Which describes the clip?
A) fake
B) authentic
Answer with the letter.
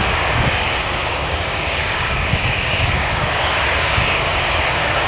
A